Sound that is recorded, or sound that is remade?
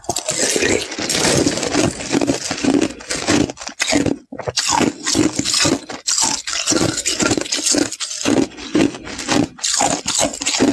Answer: recorded